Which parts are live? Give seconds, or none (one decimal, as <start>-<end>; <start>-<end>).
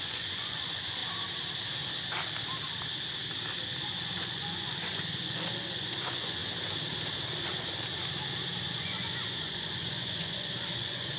1.0-3.9; 6.4-8.7